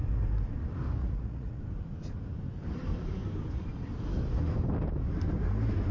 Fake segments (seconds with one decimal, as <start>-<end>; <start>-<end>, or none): 1.0-1.6